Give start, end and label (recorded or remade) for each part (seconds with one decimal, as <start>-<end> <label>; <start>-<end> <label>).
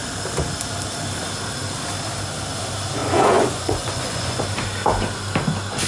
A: 0.0-3.0 recorded; 3.0-4.4 remade; 4.4-5.9 recorded